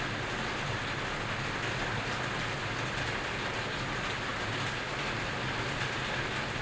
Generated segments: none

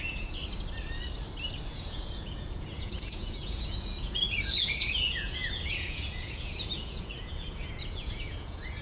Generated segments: 0.0-0.4 (vocoder, Vocos); 1.7-8.8

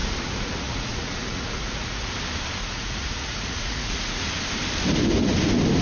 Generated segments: 0.0-2.1 (vocoder, Vocos); 2.6-4.2

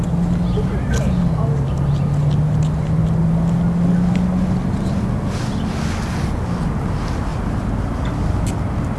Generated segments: none